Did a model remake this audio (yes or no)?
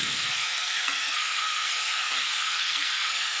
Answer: yes